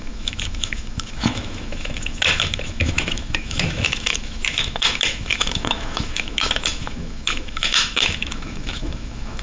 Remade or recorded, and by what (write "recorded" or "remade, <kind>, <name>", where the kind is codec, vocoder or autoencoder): remade, autoencoder, DAC-VAE